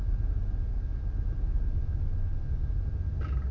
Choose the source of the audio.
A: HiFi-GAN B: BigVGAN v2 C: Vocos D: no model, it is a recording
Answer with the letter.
D